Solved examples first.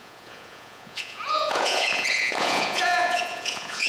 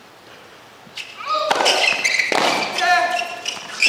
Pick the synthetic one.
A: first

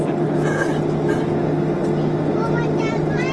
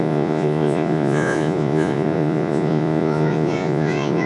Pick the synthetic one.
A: second